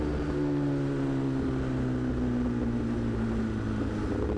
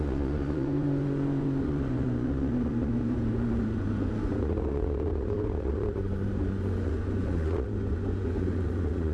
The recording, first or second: first